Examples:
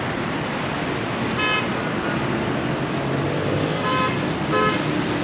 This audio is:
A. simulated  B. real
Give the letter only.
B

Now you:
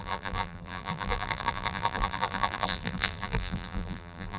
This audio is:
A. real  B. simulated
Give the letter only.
B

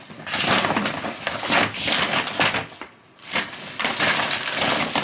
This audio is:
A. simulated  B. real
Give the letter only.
B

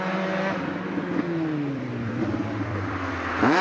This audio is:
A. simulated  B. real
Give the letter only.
A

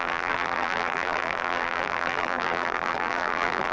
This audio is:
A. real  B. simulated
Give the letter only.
B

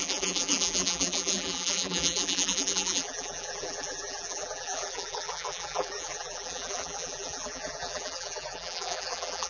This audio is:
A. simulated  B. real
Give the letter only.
A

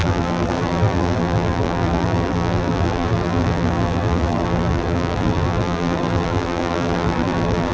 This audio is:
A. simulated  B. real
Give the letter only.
A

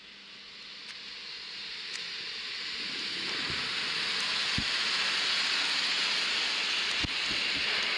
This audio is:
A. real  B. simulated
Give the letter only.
A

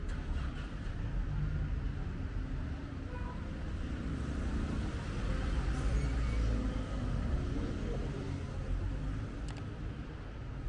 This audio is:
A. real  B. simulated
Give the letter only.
A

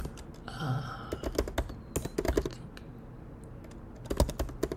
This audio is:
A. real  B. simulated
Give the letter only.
A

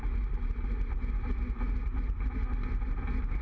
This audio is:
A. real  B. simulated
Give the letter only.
A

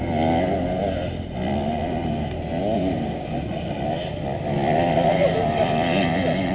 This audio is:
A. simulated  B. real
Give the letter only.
B